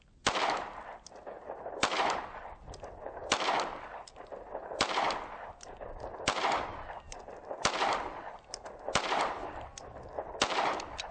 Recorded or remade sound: recorded